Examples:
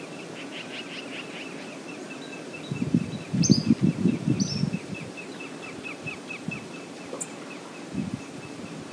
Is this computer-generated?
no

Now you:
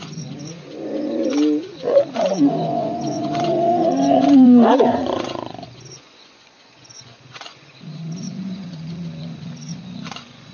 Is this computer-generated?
yes